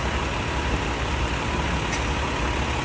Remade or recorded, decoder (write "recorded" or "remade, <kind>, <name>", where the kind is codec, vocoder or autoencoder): recorded